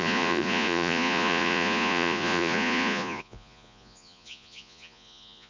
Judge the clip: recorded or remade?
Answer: remade